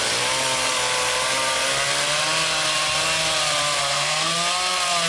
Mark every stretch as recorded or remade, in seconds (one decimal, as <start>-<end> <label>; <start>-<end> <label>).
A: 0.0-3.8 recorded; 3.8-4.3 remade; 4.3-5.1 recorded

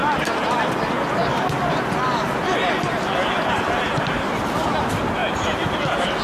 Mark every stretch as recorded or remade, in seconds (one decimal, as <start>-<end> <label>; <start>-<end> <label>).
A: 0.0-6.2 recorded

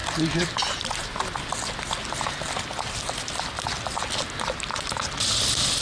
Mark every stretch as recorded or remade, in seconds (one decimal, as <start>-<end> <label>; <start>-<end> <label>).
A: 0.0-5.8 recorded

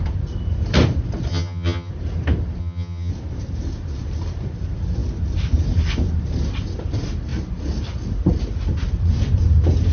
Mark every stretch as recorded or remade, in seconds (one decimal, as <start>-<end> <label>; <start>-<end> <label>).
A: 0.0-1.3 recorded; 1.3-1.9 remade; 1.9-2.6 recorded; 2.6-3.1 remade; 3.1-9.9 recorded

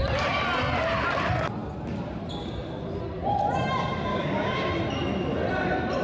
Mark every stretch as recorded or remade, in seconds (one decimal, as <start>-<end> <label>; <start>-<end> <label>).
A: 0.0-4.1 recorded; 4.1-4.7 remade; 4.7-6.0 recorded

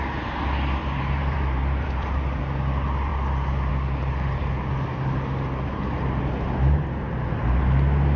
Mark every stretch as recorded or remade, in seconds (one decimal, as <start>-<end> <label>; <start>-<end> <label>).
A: 0.0-0.8 recorded; 0.8-2.4 remade; 2.4-8.2 recorded

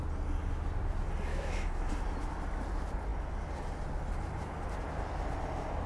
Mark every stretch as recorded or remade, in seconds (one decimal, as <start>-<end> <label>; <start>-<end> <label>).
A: 0.0-1.3 recorded; 1.3-1.9 remade; 1.9-5.9 recorded

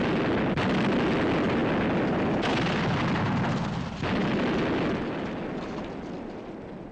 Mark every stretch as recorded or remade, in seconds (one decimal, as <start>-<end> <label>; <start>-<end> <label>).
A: 0.0-6.9 recorded